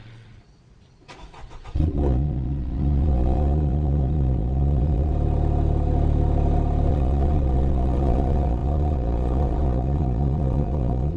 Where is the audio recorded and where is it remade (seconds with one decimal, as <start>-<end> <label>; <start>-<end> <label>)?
0.0-5.1 remade; 5.1-6.9 recorded; 6.9-11.2 remade